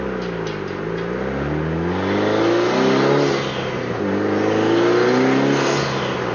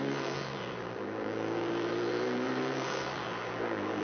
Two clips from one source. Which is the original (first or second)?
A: first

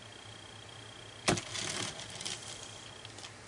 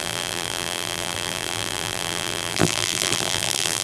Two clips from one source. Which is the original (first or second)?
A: first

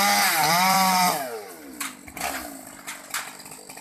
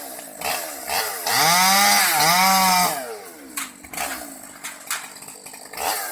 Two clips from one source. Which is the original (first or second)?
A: second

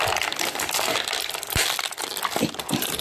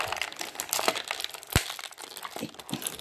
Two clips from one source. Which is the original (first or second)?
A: second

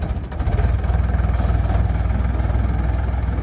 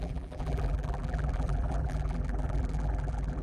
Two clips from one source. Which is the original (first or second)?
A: first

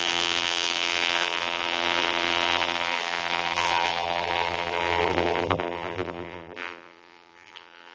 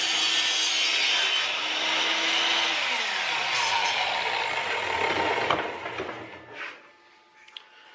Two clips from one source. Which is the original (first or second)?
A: second